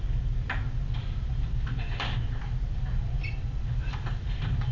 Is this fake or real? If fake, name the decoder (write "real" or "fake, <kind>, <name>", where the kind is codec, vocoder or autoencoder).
real